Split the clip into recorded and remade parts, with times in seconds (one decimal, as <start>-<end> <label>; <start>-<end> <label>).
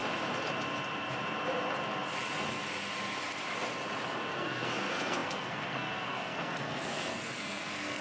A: 0.0-4.3 recorded; 4.3-8.0 remade